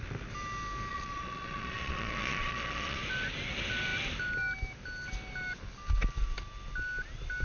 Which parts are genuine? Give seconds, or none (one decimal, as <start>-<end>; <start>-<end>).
0.0-0.9; 3.0-7.4